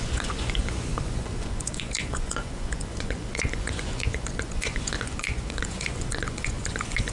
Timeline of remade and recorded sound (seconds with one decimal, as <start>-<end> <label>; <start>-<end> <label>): 0.0-7.1 remade